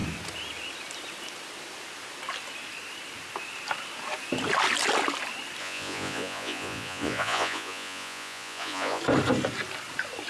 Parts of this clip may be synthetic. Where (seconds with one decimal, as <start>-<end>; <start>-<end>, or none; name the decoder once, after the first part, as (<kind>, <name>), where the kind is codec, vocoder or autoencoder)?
5.6-9.0 (vocoder, Vocos)